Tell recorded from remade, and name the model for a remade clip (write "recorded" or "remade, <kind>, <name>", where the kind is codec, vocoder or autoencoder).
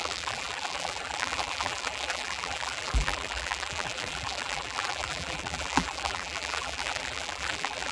remade, vocoder, BigVGAN v2